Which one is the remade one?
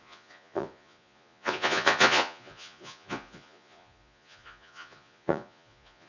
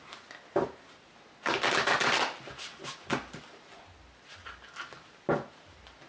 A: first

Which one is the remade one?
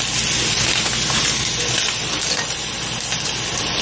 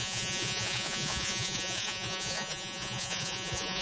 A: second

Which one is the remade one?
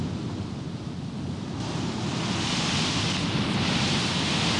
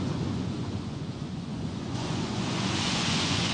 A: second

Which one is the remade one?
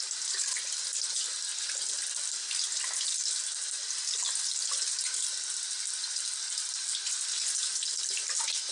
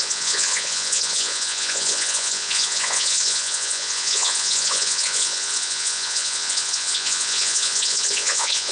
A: second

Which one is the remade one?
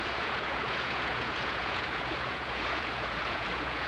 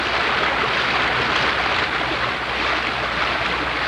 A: first